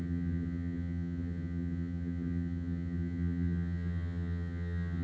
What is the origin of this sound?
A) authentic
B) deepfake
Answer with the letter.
B